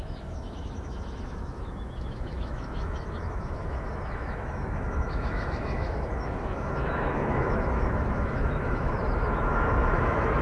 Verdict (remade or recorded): remade